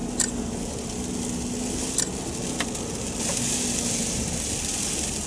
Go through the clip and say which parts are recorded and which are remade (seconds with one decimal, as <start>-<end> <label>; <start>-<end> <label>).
0.0-5.3 recorded